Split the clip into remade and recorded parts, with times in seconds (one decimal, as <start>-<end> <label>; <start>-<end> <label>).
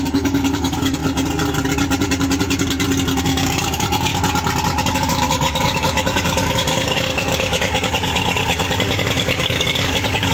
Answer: 0.0-1.0 remade; 1.0-3.2 recorded; 3.2-4.1 remade; 4.1-4.9 recorded; 4.9-10.3 remade